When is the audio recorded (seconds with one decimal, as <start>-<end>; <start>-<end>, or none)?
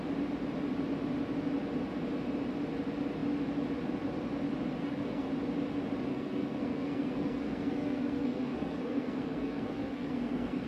0.0-4.8; 5.3-6.1